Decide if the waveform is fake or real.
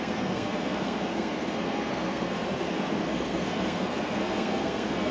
fake